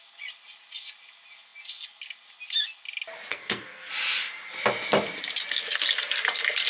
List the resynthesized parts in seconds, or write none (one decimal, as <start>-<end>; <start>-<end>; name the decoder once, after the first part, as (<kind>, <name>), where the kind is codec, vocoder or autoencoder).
3.3-3.9 (codec, SNAC)